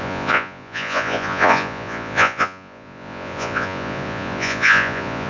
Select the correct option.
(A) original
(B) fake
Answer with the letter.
B